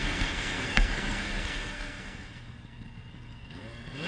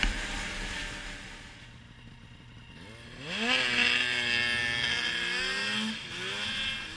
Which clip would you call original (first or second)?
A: second